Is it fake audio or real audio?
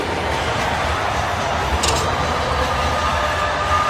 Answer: real